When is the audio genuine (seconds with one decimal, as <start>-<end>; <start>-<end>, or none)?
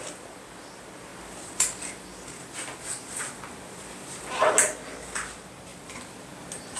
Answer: 0.0-6.8